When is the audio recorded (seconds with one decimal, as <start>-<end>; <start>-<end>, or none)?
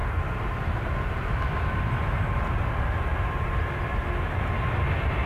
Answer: 0.0-5.3